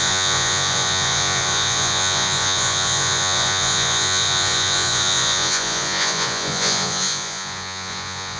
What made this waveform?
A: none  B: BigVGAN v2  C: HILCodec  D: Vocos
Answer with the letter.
D